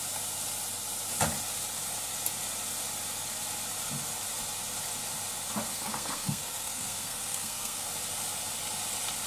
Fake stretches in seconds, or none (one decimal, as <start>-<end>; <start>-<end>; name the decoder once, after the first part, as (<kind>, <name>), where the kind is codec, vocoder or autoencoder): 5.7-7.9 (codec, SNAC)